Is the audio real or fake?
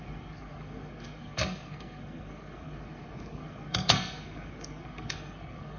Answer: fake